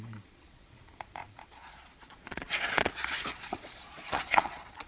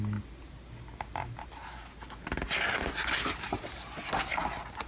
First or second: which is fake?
first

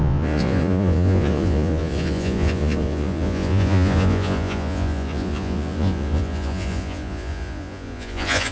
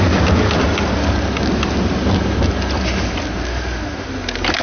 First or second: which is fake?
first